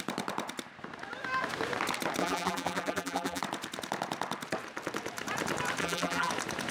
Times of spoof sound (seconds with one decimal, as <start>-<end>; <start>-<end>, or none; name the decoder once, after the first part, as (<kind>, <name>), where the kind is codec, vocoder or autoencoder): 2.2-3.4 (vocoder, BigVGAN v2); 5.8-6.3